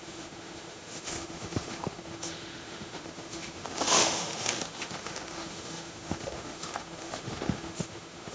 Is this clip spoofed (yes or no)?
yes